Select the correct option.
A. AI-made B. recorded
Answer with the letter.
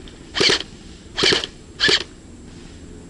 B